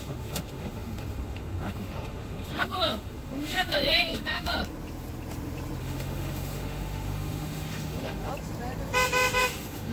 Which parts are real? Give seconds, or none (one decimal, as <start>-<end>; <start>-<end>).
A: 4.6-5.8; 8.3-9.4